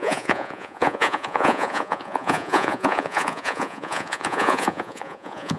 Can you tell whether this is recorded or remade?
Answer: remade